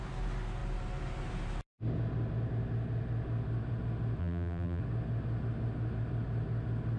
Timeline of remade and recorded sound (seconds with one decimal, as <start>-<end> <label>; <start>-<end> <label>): 0.0-4.2 recorded; 4.2-4.8 remade; 4.8-7.0 recorded